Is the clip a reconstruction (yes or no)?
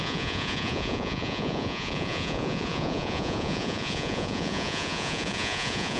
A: yes